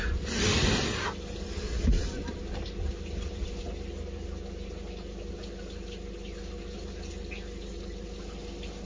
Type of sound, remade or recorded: recorded